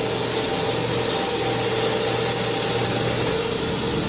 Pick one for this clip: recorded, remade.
recorded